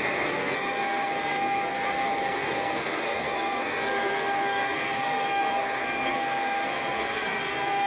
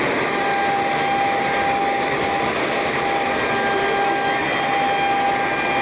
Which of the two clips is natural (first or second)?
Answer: second